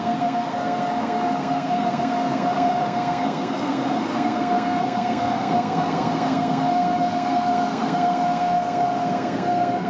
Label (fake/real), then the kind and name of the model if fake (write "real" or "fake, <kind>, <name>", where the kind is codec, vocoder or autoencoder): fake, codec, SNAC